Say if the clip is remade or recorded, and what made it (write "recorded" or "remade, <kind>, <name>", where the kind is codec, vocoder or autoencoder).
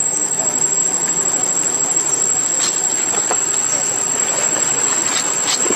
recorded